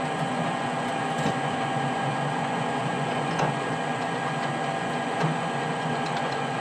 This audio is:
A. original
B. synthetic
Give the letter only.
B